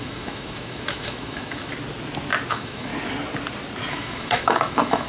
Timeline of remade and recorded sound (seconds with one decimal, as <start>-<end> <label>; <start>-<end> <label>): 0.0-1.7 remade; 1.7-2.5 recorded; 2.5-2.9 remade; 2.9-3.9 recorded; 3.9-5.1 remade

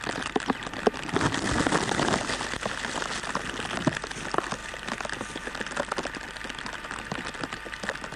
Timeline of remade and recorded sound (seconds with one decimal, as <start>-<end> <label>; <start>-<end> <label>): 0.0-8.2 recorded

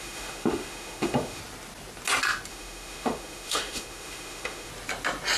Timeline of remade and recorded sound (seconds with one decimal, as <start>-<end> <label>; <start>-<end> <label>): 0.0-1.4 remade; 1.4-2.5 recorded; 2.5-4.7 remade; 4.7-5.4 recorded

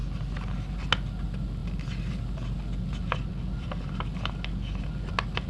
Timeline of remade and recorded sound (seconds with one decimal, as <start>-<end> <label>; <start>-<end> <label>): 0.0-5.5 recorded

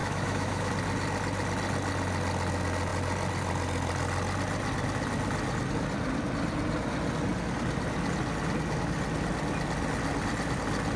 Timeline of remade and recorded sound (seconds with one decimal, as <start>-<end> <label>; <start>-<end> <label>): 0.0-0.7 remade; 0.7-11.0 recorded

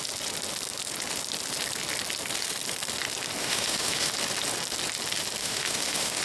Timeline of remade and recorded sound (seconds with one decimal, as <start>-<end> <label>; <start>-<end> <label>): 0.0-3.4 recorded; 3.4-4.1 remade; 4.1-5.4 recorded; 5.4-6.2 remade